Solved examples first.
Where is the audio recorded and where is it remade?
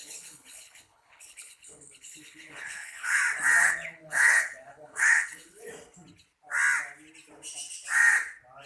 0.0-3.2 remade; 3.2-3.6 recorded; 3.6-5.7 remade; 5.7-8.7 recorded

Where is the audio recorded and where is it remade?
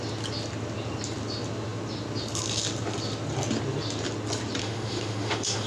0.0-4.6 recorded; 4.6-5.7 remade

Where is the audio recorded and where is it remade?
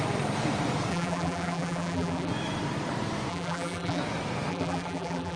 0.0-0.9 recorded; 0.9-2.3 remade; 2.3-3.3 recorded; 3.3-4.0 remade; 4.0-4.5 recorded; 4.5-5.4 remade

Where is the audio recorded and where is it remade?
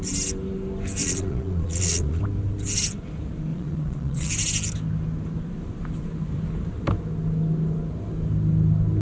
0.0-1.0 recorded; 1.0-2.2 remade; 2.2-3.5 recorded; 3.5-4.3 remade; 4.3-9.0 recorded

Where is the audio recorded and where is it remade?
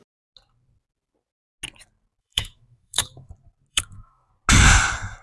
0.0-2.2 recorded; 2.2-3.3 remade; 3.3-3.7 recorded; 3.7-4.3 remade; 4.3-5.2 recorded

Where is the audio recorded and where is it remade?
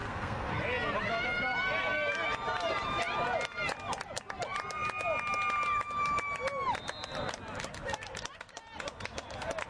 0.0-0.6 remade; 0.6-9.7 recorded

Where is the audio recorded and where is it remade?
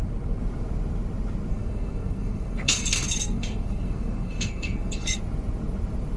0.0-1.5 recorded; 1.5-5.2 remade; 5.2-6.2 recorded